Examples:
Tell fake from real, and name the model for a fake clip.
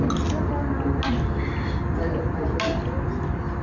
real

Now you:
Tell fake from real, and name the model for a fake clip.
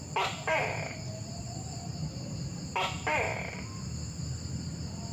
real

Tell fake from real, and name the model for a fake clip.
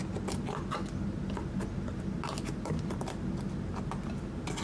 real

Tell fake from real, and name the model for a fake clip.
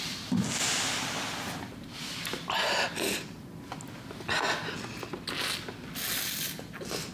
real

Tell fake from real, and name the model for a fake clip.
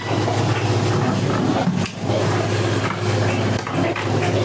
real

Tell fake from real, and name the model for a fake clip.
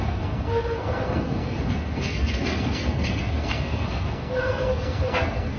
fake, codec, SNAC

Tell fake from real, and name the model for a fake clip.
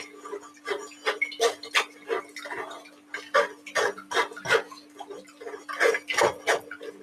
real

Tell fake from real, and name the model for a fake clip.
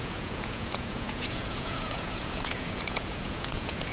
fake, vocoder, Vocos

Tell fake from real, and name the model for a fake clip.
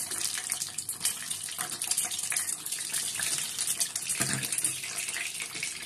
real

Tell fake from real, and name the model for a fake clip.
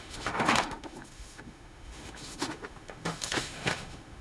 fake, autoencoder, DAC-VAE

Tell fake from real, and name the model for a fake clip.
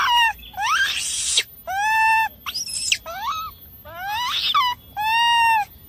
real